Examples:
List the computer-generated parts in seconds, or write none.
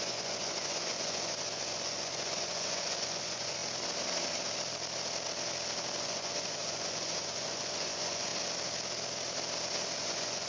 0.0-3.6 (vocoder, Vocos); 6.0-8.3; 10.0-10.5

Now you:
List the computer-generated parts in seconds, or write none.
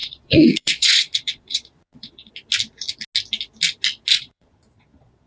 0.0-2.3 (vocoder, Vocos); 4.1-5.3